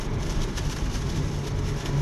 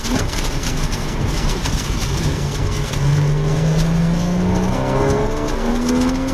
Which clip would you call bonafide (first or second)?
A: first